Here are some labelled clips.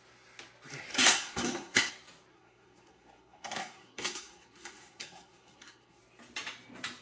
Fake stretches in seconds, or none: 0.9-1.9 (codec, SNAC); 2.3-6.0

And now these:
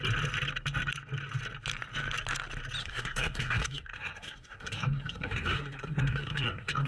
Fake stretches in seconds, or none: 2.8-6.9 (codec, SNAC)

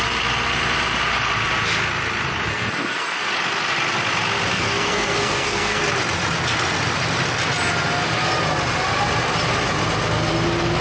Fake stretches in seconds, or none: 2.5-3.2 (codec, SNAC); 4.5-5.8

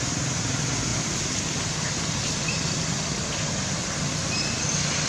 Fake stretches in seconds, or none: none

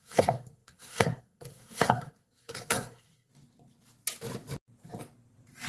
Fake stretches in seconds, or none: 0.0-3.3 (codec, SNAC)

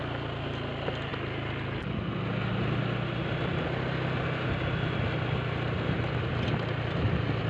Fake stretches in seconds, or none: none

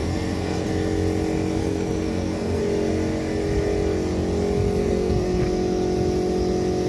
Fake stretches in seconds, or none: 0.0-0.7 (codec, SNAC); 1.6-2.6; 4.8-5.4

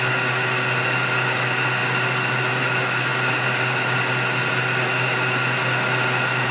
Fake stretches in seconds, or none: none